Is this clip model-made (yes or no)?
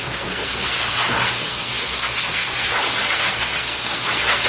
yes